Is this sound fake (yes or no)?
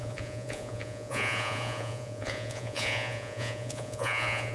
yes